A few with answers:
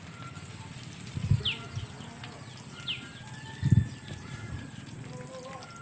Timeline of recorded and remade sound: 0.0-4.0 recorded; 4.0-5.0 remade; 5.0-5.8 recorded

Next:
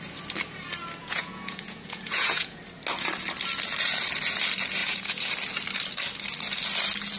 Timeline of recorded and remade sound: 0.0-1.0 recorded; 1.0-2.6 remade; 2.6-4.8 recorded; 4.8-5.3 remade; 5.3-7.2 recorded

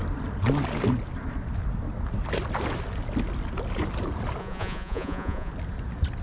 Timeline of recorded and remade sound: 0.0-4.4 recorded; 4.4-5.5 remade; 5.5-6.2 recorded

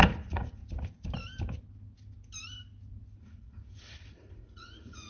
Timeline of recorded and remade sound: 0.0-0.6 remade; 0.6-3.2 recorded; 3.2-5.1 remade

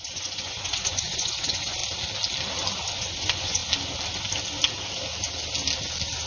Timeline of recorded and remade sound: 0.0-1.8 remade; 1.8-2.9 recorded; 2.9-3.6 remade; 3.6-6.3 recorded

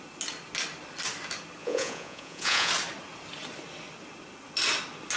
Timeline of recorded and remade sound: 0.0-1.6 recorded; 1.6-2.7 remade; 2.7-5.2 recorded